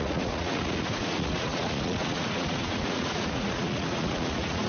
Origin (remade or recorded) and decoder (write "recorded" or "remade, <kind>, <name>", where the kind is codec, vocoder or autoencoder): remade, vocoder, Vocos